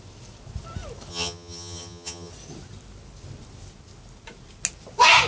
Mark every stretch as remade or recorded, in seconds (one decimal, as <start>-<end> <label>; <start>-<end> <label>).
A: 0.0-1.1 recorded; 1.1-2.3 remade; 2.3-5.3 recorded